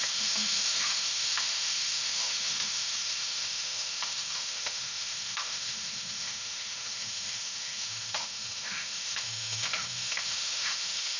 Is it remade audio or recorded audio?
remade